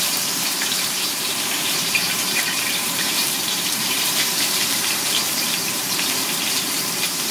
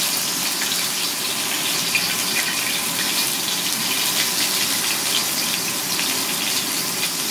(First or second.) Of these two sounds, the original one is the second